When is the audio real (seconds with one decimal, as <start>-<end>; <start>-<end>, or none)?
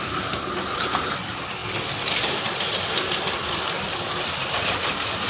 0.0-1.6; 4.0-5.3